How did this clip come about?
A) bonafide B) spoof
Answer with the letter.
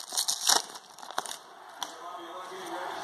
A